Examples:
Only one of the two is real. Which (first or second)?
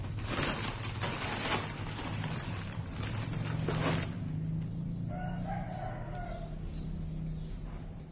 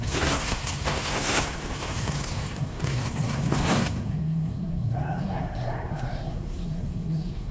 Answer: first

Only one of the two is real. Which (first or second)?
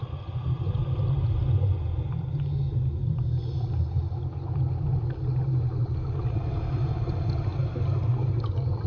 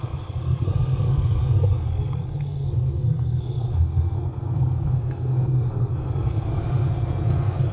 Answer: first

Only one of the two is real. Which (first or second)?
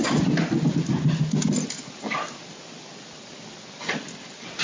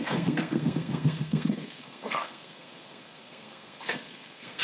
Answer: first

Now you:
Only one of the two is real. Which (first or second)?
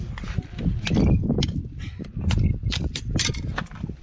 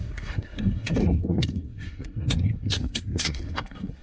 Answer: first